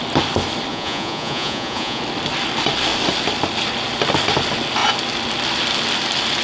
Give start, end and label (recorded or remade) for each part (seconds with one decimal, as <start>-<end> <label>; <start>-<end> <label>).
0.0-0.7 recorded; 0.7-2.0 remade; 2.0-6.4 recorded